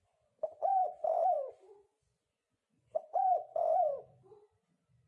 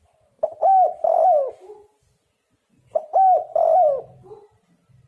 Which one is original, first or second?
second